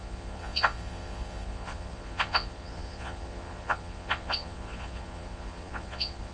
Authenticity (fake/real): fake